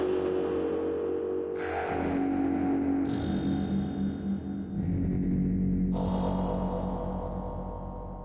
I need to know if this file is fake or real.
real